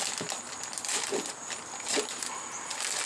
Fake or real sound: real